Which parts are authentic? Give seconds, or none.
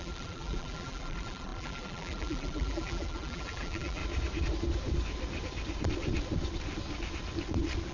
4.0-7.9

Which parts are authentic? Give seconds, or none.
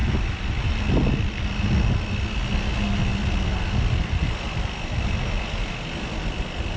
0.0-6.8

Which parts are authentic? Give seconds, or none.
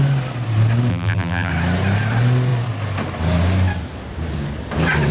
0.0-0.9; 1.5-5.1